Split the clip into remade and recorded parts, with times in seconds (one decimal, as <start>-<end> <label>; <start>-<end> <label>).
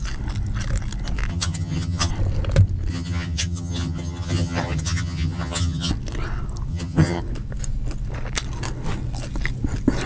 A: 0.0-1.3 recorded; 1.3-2.1 remade; 2.1-2.9 recorded; 2.9-5.9 remade; 5.9-6.7 recorded; 6.7-7.2 remade; 7.2-10.1 recorded